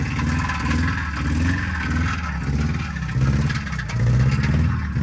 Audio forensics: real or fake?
real